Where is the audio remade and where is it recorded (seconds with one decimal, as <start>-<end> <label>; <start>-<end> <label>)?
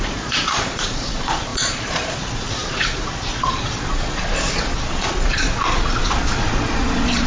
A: 0.0-7.3 remade